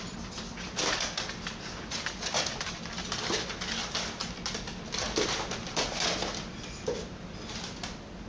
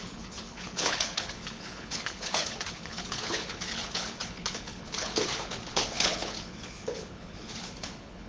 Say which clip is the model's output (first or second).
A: second